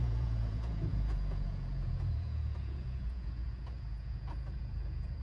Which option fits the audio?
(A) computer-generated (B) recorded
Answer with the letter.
A